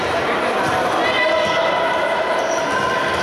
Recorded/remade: recorded